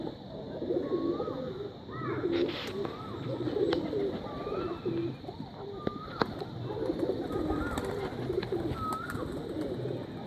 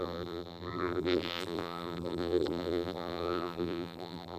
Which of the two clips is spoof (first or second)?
second